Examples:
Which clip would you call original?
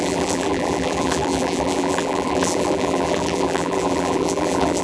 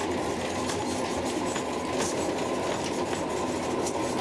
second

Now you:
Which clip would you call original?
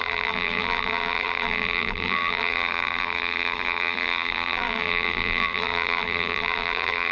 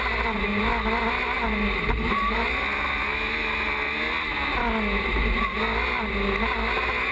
second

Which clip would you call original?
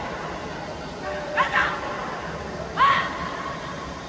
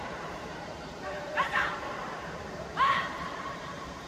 first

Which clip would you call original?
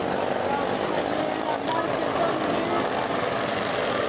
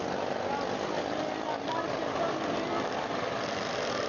first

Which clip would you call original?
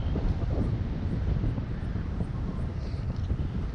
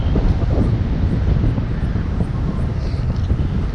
second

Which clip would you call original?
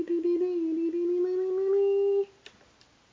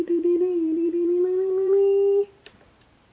first